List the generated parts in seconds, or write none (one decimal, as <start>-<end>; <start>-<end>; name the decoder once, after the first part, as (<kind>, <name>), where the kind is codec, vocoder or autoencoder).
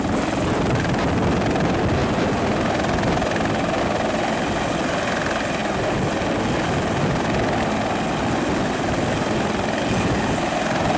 none